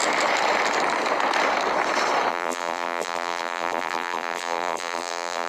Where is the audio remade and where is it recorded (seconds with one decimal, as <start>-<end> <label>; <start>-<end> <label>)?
0.0-2.3 recorded; 2.3-5.5 remade